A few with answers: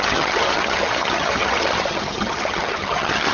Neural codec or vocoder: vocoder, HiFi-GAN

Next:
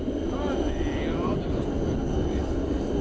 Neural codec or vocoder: none